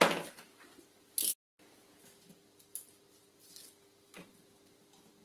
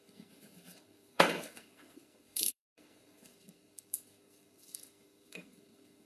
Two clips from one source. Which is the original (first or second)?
first